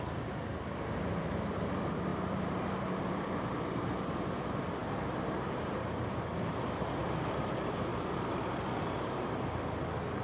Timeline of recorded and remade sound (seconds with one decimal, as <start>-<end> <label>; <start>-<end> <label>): 0.0-10.2 remade